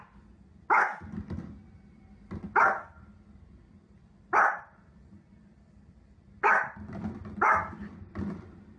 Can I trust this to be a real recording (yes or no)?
yes